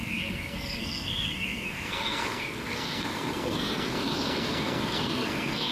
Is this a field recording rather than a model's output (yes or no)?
no